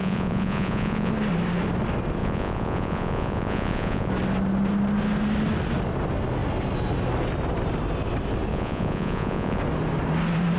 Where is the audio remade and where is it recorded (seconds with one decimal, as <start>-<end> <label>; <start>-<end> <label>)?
0.0-1.1 remade; 1.1-2.2 recorded; 2.2-4.1 remade; 4.1-8.5 recorded; 8.5-9.6 remade; 9.6-10.6 recorded